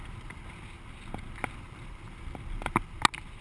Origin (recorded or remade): recorded